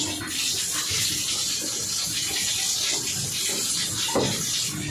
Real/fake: real